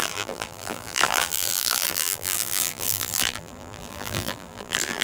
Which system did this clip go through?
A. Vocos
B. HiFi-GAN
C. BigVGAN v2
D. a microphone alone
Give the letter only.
C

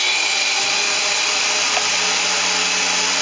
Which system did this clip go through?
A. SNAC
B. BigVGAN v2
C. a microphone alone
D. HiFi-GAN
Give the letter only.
B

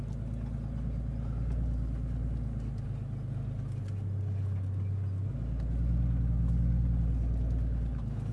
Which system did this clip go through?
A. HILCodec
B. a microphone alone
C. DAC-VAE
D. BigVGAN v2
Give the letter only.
B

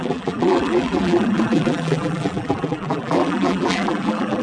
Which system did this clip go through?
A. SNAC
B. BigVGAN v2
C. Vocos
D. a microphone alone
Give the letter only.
B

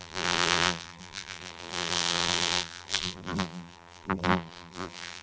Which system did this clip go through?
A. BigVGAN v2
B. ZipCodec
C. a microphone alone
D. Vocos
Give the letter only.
A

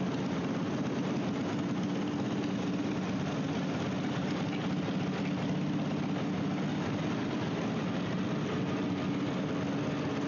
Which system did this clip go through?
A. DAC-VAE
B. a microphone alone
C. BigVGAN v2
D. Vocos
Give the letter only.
B